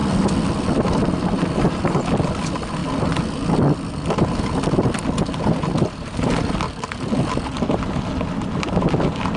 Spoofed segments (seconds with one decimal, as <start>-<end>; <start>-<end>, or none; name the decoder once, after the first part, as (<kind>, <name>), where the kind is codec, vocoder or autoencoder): none